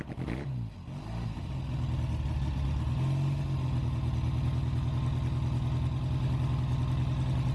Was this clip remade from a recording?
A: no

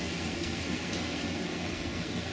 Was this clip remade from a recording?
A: yes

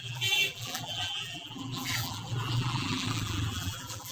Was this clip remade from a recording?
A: yes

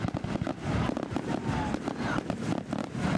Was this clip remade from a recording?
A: no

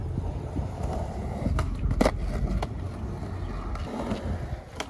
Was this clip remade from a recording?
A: no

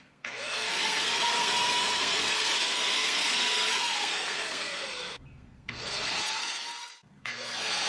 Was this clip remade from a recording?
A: yes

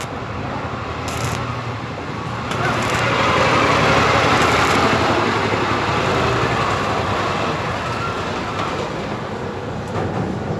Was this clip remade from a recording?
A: no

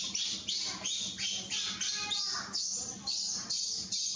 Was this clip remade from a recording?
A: no